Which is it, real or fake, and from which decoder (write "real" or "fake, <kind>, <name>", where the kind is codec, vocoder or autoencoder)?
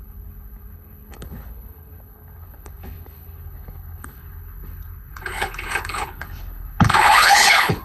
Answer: fake, codec, HILCodec